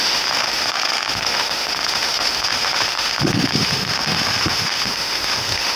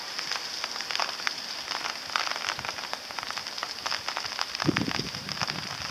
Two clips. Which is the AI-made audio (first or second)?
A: first